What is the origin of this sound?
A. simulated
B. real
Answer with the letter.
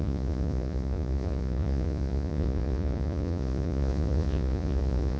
A